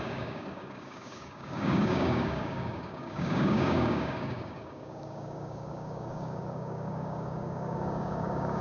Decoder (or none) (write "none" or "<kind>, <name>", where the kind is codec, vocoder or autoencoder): codec, DAC